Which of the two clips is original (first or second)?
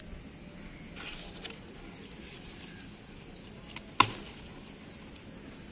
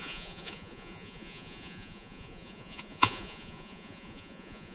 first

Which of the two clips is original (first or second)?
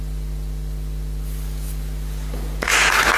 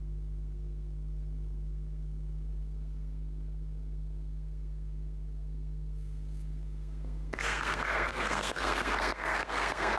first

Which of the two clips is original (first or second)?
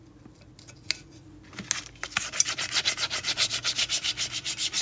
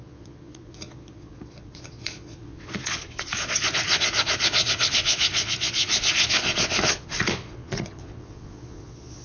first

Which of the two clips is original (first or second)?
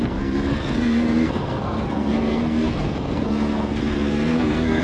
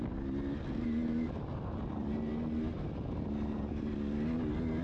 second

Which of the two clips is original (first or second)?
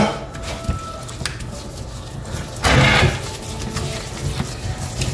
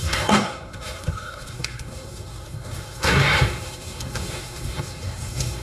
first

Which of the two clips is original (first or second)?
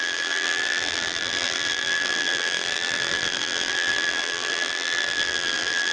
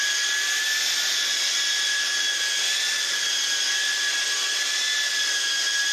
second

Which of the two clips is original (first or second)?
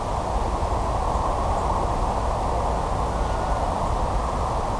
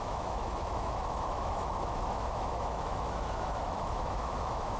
first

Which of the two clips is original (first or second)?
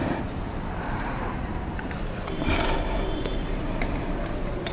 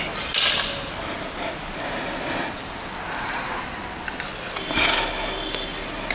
second